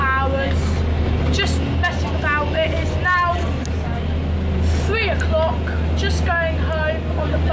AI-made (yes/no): no